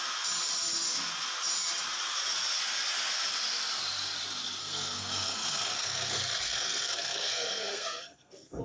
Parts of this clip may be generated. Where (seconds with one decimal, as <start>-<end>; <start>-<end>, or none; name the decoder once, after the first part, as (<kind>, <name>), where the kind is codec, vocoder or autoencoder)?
4.6-8.6 (codec, SNAC)